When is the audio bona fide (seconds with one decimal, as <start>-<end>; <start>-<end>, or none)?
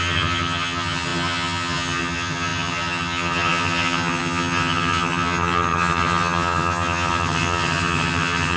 none